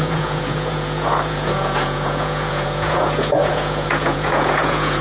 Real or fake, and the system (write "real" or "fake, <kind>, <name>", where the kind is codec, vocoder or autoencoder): fake, vocoder, Vocos